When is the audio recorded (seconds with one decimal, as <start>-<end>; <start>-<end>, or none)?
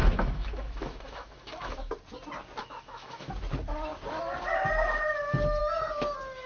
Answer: 1.9-2.6; 3.3-6.5